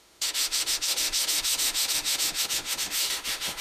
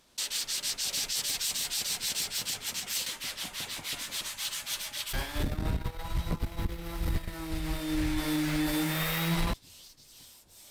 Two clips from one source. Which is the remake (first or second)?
first